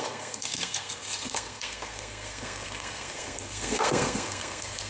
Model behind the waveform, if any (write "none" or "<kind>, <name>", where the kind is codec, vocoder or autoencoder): codec, SNAC